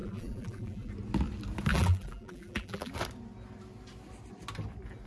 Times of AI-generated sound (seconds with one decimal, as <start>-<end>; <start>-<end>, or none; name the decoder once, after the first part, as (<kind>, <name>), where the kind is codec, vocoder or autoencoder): 0.0-0.9 (vocoder, BigVGAN v2); 1.7-2.9